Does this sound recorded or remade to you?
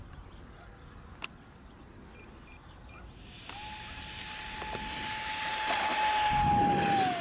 recorded